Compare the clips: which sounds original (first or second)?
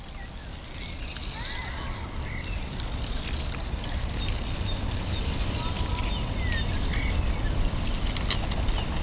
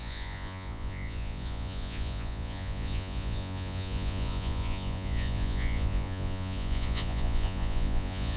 first